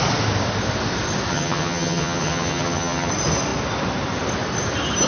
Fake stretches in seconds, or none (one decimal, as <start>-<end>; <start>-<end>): 1.3-3.1